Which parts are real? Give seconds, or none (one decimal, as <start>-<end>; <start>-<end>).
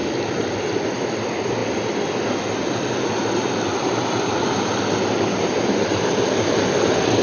0.0-7.2